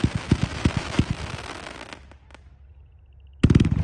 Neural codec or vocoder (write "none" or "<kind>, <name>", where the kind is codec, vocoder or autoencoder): none